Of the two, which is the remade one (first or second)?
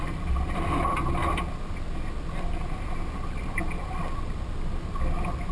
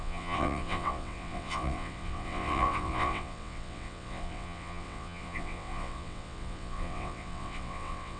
second